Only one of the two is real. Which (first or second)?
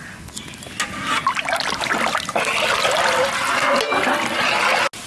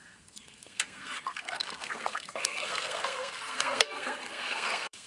first